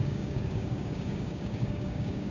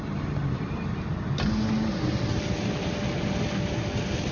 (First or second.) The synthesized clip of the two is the first